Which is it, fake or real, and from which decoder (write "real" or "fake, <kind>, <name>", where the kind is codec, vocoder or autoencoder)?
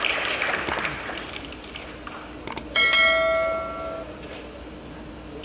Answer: real